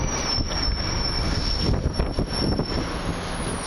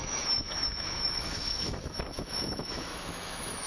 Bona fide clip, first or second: first